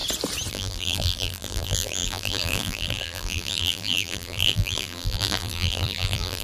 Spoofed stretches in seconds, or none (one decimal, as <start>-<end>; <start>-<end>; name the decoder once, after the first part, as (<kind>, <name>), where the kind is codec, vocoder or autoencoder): 0.5-6.4 (vocoder, BigVGAN v2)